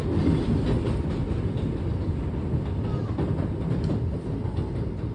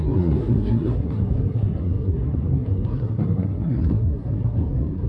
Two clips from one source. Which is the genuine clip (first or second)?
first